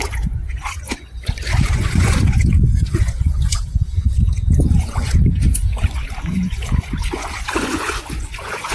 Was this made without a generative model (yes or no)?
no